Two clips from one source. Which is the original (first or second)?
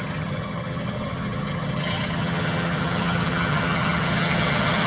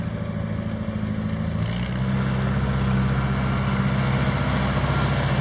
second